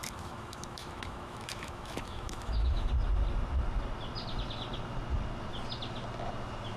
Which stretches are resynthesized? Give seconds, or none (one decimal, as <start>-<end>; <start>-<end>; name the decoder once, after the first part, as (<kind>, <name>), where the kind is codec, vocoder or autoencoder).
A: 0.0-2.9 (autoencoder, DAC-VAE)